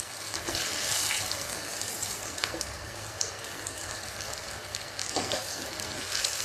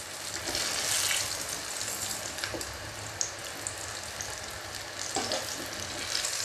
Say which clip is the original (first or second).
second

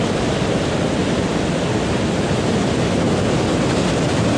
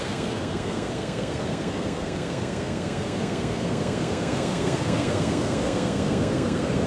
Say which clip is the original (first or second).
first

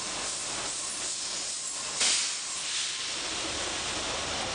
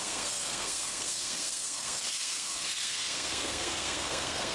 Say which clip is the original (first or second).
first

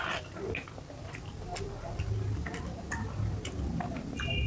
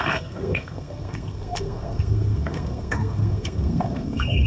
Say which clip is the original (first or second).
first